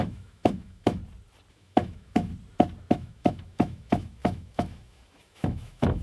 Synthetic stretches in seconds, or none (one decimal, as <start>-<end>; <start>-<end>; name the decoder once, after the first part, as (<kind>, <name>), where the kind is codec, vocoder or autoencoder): 0.0-1.0 (autoencoder, DAC-VAE); 1.5-2.3; 2.9-6.0